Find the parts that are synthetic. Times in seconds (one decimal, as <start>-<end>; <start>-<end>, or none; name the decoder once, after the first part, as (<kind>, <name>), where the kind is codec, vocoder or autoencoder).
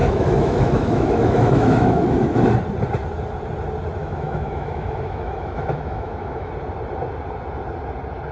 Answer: 0.0-2.4 (autoencoder, DAC-VAE); 4.0-6.5